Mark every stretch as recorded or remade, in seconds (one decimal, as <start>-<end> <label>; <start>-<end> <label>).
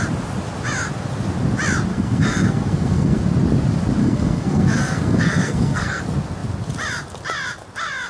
0.0-1.9 recorded; 1.9-3.2 remade; 3.2-4.0 recorded; 4.0-6.0 remade; 6.0-8.1 recorded